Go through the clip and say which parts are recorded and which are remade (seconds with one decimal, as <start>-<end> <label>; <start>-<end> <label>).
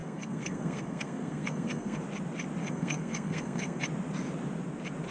0.0-2.0 remade; 2.0-2.6 recorded; 2.6-3.8 remade; 3.8-5.1 recorded